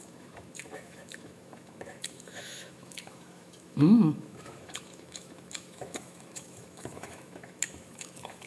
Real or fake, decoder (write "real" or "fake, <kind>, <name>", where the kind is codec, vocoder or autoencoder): fake, autoencoder, DAC-VAE